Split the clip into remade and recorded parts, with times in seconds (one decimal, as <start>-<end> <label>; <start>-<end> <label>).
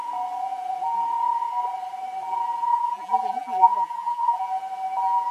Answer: 0.0-2.7 recorded; 2.7-4.4 remade; 4.4-5.3 recorded